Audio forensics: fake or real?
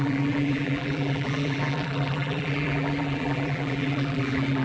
fake